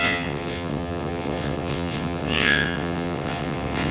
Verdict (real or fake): fake